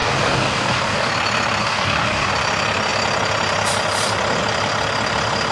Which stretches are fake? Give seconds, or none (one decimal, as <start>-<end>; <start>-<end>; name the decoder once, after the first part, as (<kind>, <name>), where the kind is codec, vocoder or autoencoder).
0.0-1.1 (codec, DAC); 1.6-2.3